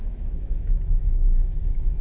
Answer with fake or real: fake